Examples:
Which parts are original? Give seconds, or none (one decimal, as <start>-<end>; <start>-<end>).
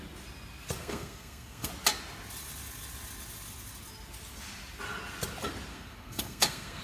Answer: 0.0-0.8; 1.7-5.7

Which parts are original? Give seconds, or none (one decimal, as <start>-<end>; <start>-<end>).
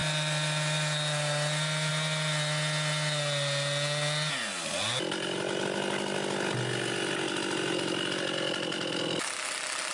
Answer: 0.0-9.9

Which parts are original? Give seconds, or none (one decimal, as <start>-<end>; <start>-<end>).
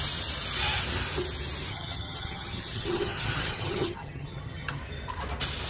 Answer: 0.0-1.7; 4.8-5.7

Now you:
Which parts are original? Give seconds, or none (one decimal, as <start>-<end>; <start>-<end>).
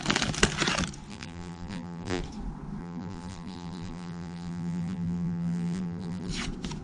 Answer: 0.0-1.1; 2.2-2.8; 6.3-6.8